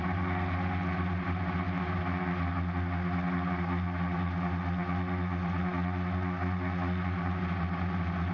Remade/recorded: recorded